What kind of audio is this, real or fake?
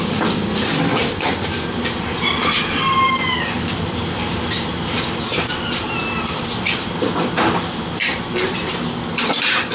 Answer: real